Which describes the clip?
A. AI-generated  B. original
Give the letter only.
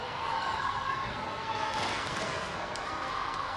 A